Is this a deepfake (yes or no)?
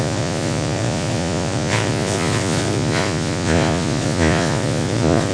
yes